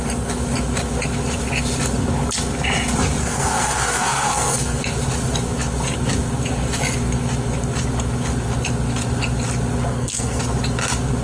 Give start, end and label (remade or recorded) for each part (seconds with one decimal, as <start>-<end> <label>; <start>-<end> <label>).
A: 0.0-3.2 recorded; 3.2-4.8 remade; 4.8-9.9 recorded; 9.9-10.4 remade; 10.4-11.2 recorded